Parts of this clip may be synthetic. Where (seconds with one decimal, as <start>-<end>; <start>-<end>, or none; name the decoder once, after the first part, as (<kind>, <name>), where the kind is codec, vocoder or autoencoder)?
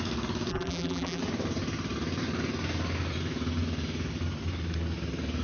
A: 0.5-1.2 (vocoder, BigVGAN v2)